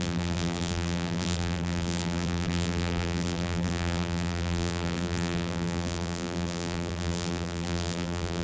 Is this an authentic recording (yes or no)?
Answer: no